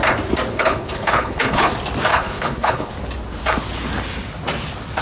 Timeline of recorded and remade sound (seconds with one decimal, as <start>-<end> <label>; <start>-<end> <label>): 0.0-0.5 recorded; 0.5-1.7 remade; 1.7-2.1 recorded; 2.1-2.9 remade; 2.9-5.0 recorded